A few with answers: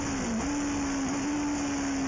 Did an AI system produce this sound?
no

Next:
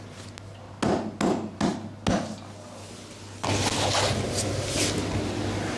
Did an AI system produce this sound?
no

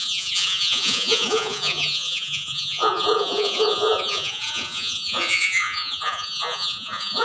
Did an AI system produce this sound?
yes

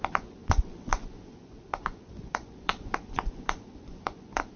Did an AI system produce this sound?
yes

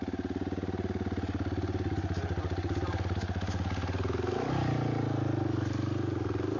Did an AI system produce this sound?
no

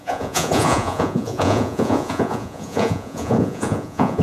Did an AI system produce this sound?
yes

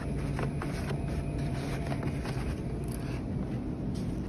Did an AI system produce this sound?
no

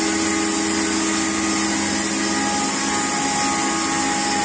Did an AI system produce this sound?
no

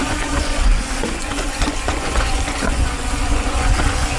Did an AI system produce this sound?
yes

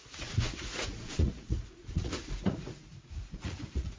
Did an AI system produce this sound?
yes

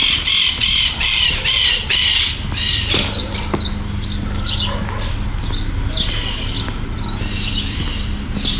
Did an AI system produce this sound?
no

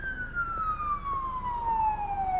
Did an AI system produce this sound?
no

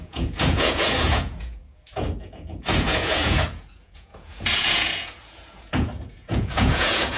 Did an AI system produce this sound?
yes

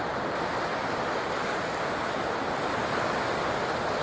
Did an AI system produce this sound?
no